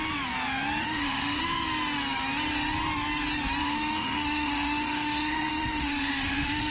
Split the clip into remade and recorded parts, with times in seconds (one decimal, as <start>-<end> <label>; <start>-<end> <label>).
0.0-0.8 recorded; 0.8-1.4 remade; 1.4-3.6 recorded; 3.6-6.7 remade